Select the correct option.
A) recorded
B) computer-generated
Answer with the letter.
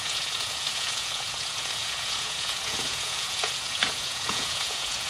B